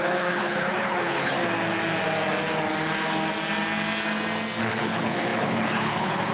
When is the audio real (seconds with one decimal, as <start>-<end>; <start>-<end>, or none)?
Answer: 1.3-4.6

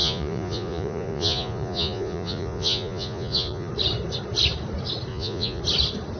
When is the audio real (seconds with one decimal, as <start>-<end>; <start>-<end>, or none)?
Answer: 3.7-5.1; 5.6-6.2